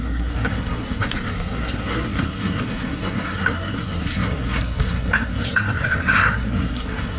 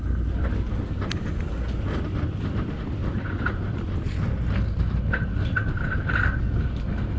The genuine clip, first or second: second